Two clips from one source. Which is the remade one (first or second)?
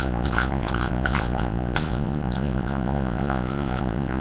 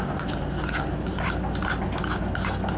first